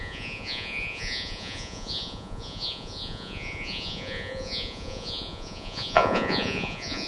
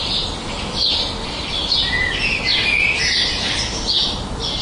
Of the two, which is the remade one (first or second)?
first